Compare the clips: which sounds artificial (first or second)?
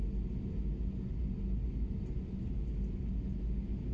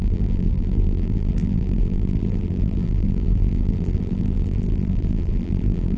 second